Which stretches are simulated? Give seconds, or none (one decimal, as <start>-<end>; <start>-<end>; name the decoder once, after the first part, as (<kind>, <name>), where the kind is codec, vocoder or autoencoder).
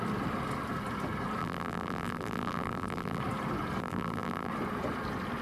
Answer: 1.4-3.2 (vocoder, BigVGAN v2); 3.8-4.5